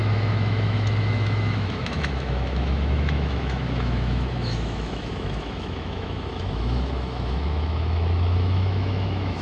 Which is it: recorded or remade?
remade